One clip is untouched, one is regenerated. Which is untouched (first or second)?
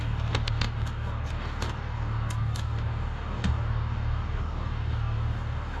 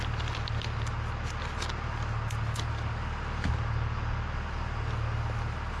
second